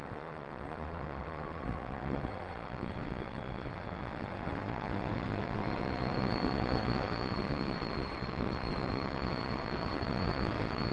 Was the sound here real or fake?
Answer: fake